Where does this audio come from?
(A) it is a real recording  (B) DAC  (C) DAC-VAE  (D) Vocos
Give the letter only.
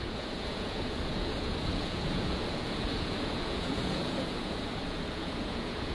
D